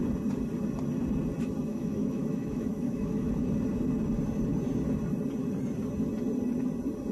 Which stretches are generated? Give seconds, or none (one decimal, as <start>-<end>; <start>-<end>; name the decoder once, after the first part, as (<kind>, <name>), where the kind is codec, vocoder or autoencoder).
1.7-3.3 (autoencoder, DAC-VAE)